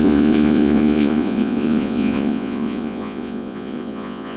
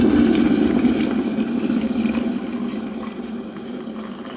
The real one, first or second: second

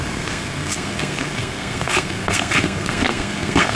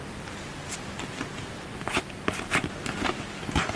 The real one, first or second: second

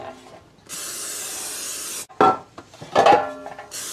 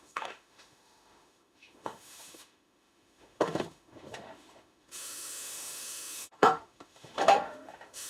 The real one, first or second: first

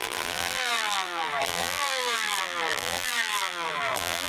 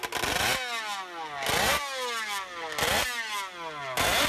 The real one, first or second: second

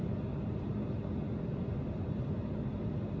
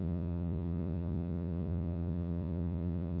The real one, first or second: first